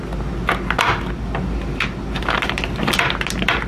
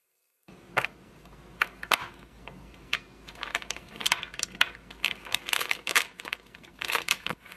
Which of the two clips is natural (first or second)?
first